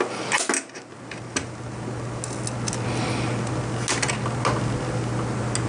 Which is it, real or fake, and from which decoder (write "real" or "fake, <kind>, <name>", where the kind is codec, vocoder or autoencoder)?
real